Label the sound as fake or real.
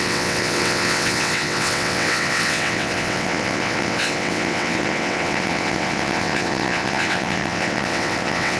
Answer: fake